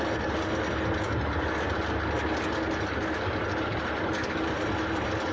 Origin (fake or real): real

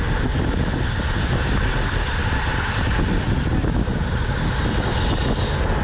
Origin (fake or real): real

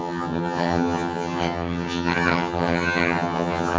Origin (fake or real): fake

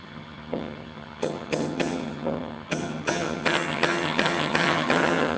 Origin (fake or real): fake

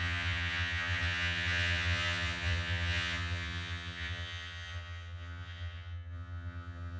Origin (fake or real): fake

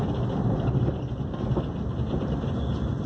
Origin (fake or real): real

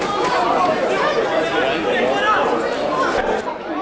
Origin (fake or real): real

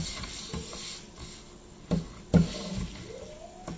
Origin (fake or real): real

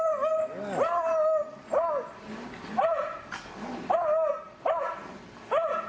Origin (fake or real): real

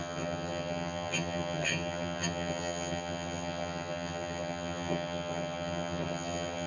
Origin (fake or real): fake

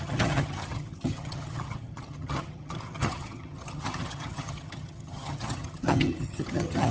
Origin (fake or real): fake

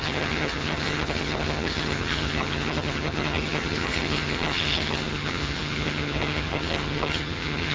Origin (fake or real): fake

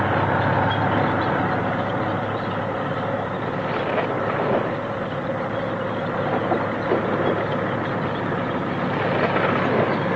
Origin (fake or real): real